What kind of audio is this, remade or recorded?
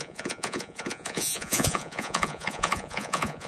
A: remade